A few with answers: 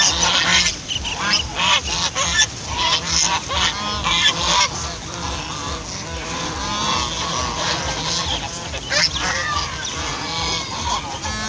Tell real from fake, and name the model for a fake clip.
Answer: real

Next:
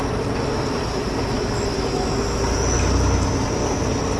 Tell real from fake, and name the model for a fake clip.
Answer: real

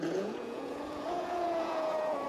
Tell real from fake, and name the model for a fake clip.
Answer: fake, vocoder, Vocos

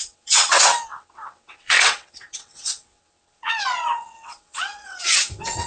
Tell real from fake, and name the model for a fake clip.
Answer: fake, vocoder, WaveNeXt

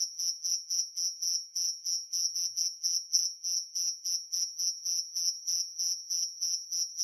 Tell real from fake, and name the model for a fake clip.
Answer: fake, vocoder, BigVGAN v2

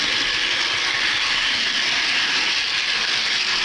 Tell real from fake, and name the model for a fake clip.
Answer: real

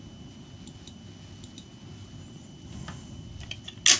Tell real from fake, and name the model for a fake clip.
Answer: real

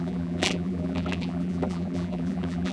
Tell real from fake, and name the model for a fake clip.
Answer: fake, vocoder, BigVGAN v2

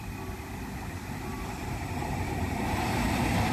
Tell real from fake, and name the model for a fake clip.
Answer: fake, vocoder, BigVGAN v2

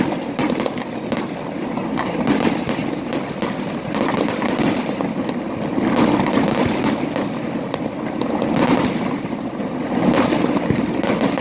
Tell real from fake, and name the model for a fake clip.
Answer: real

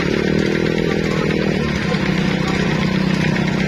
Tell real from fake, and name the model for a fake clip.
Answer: real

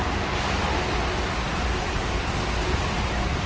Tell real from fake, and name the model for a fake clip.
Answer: real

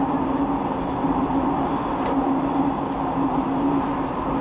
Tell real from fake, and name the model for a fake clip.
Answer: real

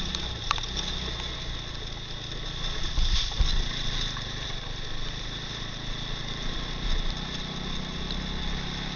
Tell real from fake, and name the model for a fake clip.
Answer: real